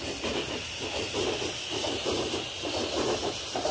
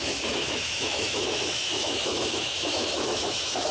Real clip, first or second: first